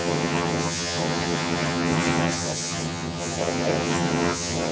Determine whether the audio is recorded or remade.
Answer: remade